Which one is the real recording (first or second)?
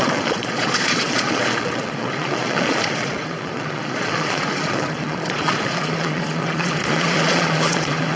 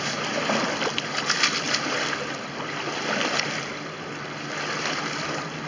second